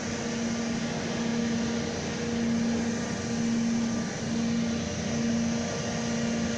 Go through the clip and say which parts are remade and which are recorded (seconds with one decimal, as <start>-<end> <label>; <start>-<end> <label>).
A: 0.0-6.6 recorded